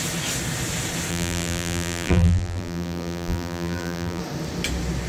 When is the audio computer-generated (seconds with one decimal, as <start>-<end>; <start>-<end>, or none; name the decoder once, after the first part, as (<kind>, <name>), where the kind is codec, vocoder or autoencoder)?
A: 1.1-4.2 (vocoder, BigVGAN v2)